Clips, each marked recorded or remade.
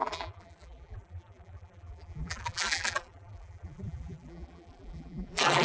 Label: remade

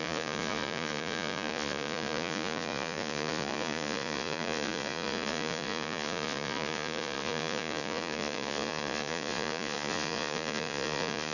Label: remade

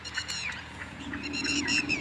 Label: remade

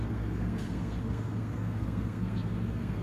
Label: remade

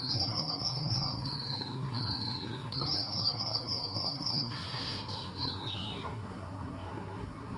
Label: remade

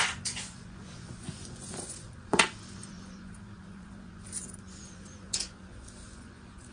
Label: remade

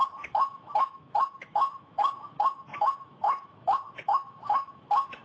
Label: remade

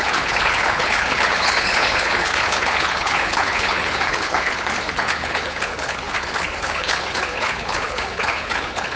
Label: remade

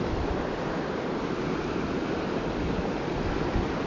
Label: recorded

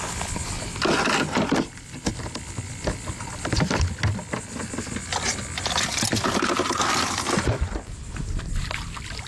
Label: recorded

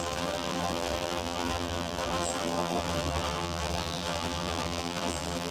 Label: remade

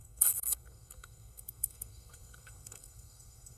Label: remade